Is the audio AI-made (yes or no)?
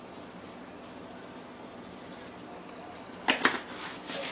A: no